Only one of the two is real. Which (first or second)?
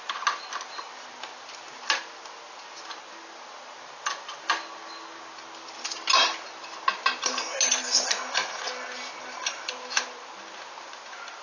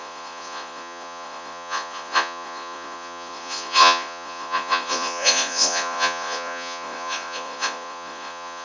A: first